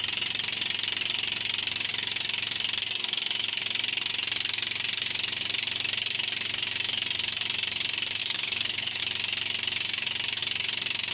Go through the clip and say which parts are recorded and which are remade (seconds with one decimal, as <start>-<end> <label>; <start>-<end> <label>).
0.0-8.2 recorded; 8.2-9.0 remade; 9.0-11.1 recorded